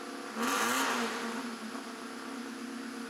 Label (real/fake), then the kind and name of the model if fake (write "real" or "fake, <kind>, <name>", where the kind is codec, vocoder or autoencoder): real